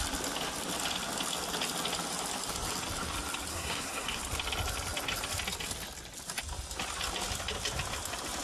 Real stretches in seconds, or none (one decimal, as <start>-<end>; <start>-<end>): 0.0-3.5; 4.2-8.4